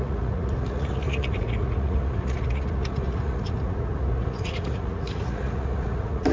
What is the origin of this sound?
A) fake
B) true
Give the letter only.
A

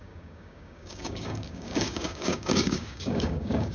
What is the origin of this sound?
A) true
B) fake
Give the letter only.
B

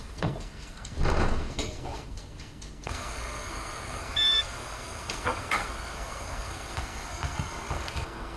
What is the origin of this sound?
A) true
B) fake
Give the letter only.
B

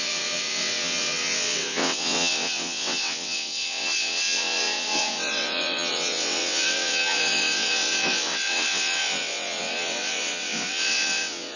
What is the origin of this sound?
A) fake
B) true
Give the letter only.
A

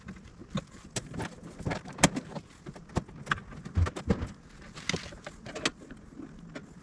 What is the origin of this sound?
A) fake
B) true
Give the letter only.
B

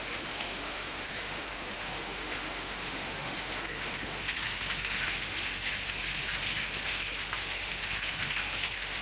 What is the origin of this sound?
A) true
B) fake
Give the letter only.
B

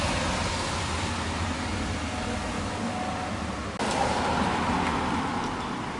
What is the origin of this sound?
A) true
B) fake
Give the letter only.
A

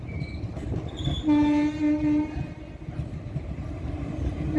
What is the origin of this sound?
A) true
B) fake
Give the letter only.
A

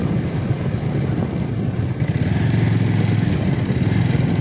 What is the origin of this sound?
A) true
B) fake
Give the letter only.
A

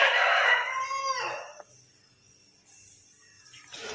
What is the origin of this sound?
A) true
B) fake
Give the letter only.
A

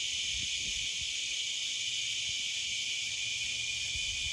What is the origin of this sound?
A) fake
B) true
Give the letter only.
B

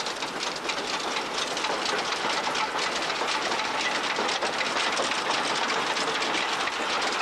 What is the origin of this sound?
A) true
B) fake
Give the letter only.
A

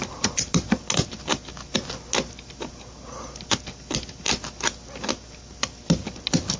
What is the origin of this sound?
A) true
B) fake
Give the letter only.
A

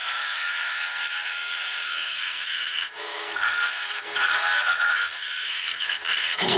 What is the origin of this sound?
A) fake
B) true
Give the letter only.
A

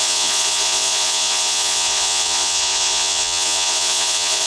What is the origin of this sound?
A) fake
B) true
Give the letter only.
A